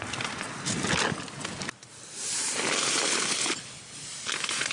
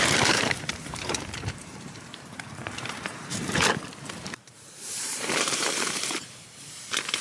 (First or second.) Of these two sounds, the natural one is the first